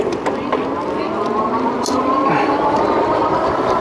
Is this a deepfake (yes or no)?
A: no